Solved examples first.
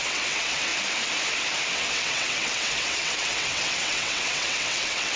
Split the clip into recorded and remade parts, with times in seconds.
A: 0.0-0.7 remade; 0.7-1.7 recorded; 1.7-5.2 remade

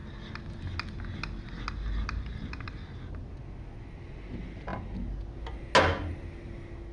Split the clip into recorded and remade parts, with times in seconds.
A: 0.0-6.9 recorded

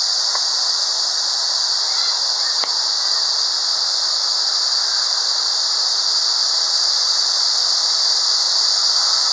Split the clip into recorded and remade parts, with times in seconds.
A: 0.0-9.3 recorded